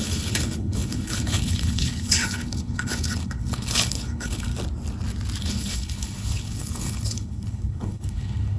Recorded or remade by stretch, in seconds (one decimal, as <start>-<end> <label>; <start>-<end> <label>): 0.0-4.5 remade; 4.5-5.4 recorded; 5.4-8.6 remade